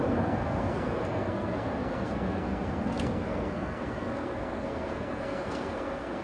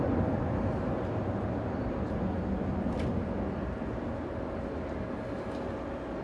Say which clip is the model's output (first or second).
first